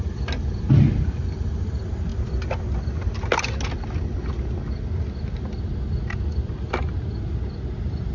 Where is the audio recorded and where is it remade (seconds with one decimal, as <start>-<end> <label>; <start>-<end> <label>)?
0.0-8.1 recorded